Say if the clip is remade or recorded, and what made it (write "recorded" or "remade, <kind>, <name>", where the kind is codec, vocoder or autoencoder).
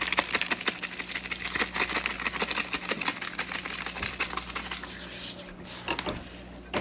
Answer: recorded